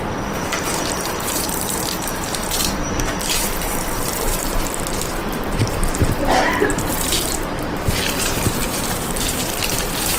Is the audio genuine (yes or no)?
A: no